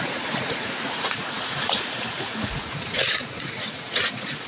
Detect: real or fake fake